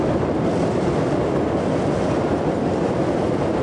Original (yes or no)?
yes